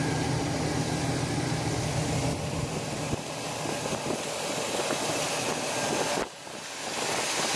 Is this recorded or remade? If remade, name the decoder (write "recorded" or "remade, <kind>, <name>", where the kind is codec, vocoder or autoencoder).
recorded